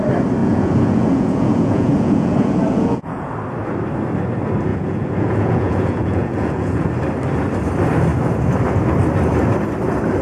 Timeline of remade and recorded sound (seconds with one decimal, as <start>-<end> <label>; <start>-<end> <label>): 0.0-0.4 recorded; 0.4-3.3 remade; 3.3-4.7 recorded; 4.7-6.9 remade; 6.9-10.2 recorded